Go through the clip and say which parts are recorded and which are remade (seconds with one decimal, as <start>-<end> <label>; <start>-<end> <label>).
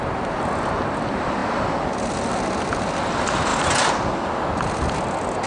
0.0-5.5 recorded